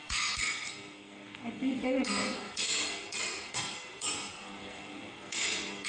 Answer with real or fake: fake